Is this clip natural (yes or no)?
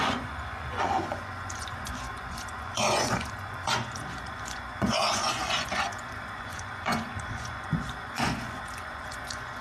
no